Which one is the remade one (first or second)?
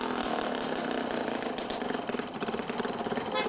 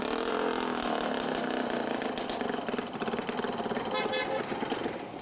first